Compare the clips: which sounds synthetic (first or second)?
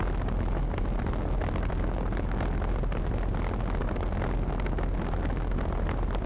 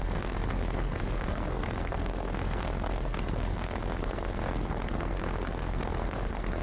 second